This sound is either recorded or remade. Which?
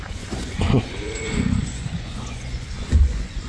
remade